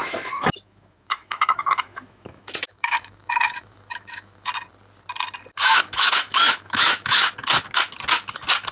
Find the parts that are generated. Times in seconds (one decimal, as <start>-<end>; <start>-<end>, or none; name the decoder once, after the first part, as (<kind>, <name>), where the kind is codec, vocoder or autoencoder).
0.0-4.5 (autoencoder, DAC-VAE); 5.6-7.3